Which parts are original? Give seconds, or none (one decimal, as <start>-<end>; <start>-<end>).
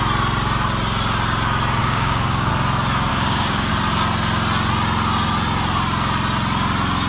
0.0-1.8; 2.5-3.1; 3.7-7.1